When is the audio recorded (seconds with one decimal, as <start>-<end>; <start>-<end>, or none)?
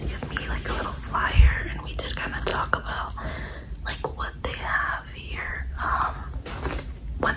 0.0-5.4; 6.0-7.4